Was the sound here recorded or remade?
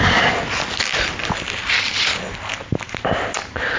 recorded